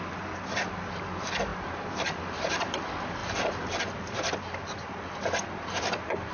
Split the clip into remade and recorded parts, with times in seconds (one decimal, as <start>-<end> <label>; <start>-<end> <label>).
0.0-0.7 remade; 0.7-1.5 recorded; 1.5-2.2 remade; 2.2-3.2 recorded; 3.2-3.8 remade; 3.8-6.3 recorded